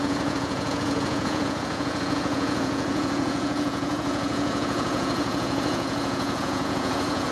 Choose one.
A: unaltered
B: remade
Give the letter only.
B